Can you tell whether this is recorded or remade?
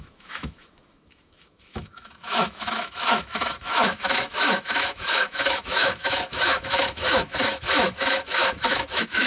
remade